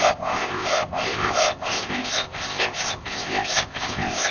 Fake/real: fake